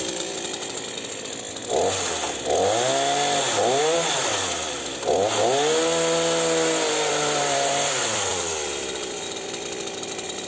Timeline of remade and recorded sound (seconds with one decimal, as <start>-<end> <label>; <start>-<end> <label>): 0.0-1.6 remade; 1.6-3.8 recorded; 3.8-4.3 remade; 4.3-6.9 recorded; 6.9-10.5 remade